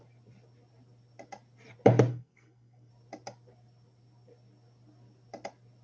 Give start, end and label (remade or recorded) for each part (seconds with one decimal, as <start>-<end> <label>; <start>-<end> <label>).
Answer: 0.0-2.1 recorded; 2.1-2.9 remade; 2.9-5.8 recorded

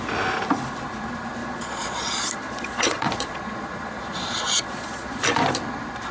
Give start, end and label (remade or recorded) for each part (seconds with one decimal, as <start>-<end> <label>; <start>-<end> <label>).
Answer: 0.0-1.4 recorded; 1.4-5.1 remade; 5.1-6.1 recorded

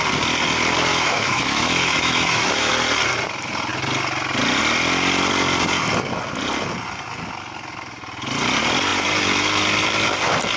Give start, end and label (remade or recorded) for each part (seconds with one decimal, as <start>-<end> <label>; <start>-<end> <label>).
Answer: 0.0-0.9 recorded; 0.9-2.7 remade; 2.7-10.6 recorded

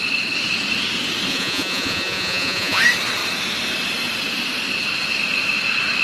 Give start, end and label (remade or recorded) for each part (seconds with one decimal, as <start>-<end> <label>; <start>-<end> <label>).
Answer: 0.0-1.3 recorded; 1.3-2.8 remade; 2.8-6.0 recorded

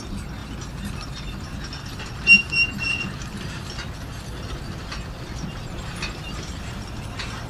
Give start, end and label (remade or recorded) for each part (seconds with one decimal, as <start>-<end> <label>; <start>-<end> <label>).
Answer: 0.0-7.5 recorded

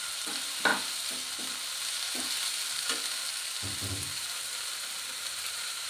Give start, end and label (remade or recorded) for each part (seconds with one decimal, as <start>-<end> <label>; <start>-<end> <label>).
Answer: 0.0-0.7 remade; 0.7-4.2 recorded; 4.2-5.9 remade

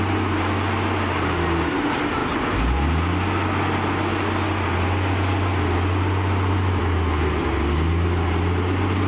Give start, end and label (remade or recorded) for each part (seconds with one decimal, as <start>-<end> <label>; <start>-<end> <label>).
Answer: 0.0-9.1 recorded